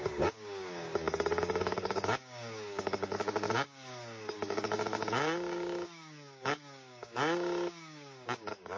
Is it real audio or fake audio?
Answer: fake